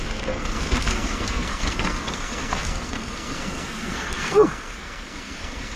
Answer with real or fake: fake